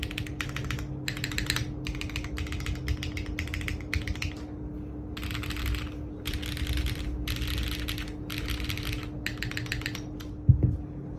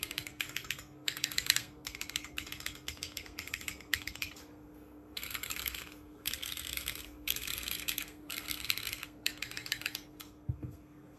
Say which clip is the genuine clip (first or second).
first